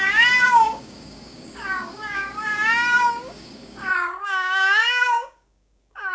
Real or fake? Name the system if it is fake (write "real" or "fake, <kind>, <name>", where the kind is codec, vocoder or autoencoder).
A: fake, codec, DAC